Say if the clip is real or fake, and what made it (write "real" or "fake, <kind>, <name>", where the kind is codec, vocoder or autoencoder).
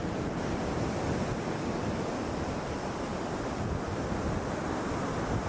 real